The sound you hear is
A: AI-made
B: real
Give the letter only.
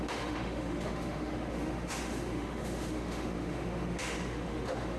A